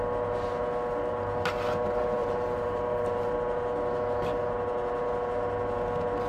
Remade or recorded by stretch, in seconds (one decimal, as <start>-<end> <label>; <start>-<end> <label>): 0.0-2.2 recorded; 2.2-3.3 remade; 3.3-6.3 recorded